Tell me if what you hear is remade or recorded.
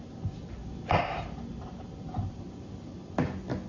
recorded